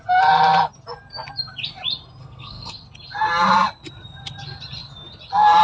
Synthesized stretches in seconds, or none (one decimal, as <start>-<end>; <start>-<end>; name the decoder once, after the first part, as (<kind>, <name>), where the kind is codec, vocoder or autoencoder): 2.2-2.7 (codec, SNAC)